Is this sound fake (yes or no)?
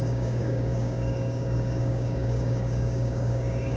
yes